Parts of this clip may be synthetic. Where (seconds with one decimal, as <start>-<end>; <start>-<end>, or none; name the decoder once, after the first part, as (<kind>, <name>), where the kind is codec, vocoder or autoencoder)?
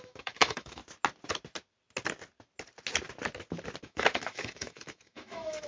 0.0-0.8 (autoencoder, DAC-VAE); 3.8-5.7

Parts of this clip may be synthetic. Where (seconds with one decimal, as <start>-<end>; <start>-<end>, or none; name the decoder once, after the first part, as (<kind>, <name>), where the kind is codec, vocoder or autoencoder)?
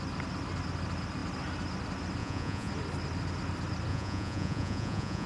2.2-2.7 (vocoder, Vocos); 3.9-5.3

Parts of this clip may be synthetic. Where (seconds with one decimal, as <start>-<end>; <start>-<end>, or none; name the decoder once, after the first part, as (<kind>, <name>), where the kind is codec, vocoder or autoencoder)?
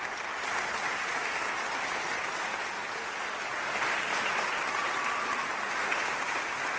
none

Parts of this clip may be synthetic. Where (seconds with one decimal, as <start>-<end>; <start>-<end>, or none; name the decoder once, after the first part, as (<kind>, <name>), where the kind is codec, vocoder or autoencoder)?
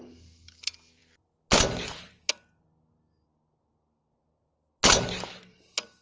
none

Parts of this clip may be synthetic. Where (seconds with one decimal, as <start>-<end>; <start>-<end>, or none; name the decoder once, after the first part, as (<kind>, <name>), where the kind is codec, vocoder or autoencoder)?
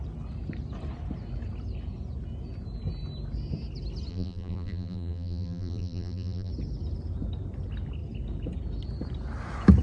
4.1-6.5 (vocoder, BigVGAN v2)